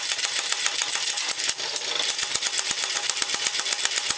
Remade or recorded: recorded